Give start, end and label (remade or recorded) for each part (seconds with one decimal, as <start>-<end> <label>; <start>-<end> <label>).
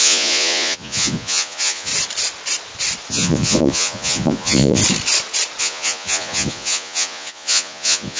0.0-1.9 remade; 1.9-3.1 recorded; 3.1-4.8 remade; 4.8-5.6 recorded; 5.6-8.2 remade